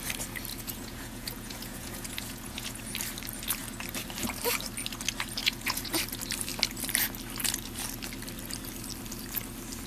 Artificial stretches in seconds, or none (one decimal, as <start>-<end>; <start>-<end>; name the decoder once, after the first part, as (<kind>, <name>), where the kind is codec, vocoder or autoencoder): 0.5-2.8 (vocoder, Vocos); 5.4-6.0